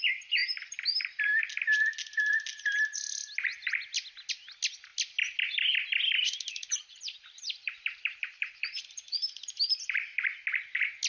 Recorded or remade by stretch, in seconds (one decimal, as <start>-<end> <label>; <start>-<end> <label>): 0.0-6.5 recorded; 6.5-10.0 remade; 10.0-11.1 recorded